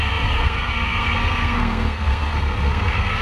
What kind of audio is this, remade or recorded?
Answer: remade